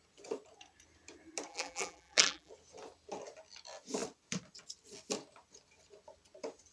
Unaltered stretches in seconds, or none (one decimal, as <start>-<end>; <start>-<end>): 0.0-1.5; 2.5-6.7